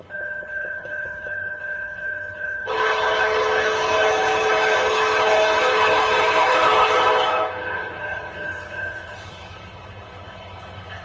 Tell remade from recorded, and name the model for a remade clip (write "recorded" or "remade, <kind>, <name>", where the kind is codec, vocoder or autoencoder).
remade, codec, HILCodec